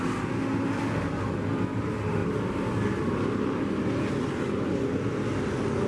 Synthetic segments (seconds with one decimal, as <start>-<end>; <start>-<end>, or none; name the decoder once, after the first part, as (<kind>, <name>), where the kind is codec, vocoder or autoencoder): none